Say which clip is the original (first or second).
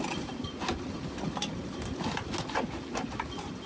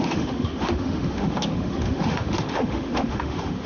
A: first